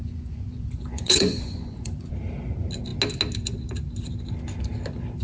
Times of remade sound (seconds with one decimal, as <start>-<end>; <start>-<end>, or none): 0.0-2.1